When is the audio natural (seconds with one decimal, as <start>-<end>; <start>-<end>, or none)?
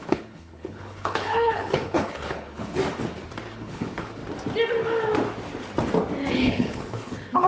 2.8-3.5; 4.2-6.3